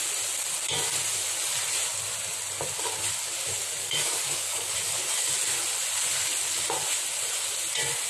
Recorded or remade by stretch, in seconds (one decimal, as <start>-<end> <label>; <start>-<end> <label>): 0.0-3.8 recorded; 3.8-4.7 remade; 4.7-8.1 recorded